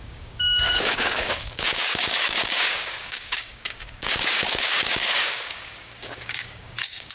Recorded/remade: remade